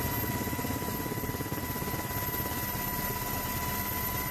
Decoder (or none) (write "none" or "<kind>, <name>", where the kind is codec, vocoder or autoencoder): none